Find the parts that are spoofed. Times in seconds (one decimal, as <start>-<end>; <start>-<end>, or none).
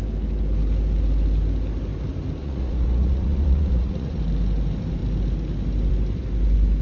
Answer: 2.4-4.2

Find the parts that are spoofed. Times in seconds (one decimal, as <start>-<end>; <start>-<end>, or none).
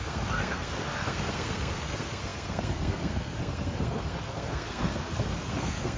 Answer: 0.0-6.0